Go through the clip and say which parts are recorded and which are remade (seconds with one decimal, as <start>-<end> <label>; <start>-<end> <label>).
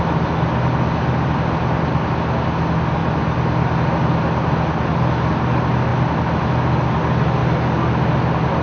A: 0.0-8.6 recorded